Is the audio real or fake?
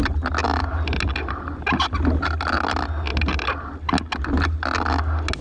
real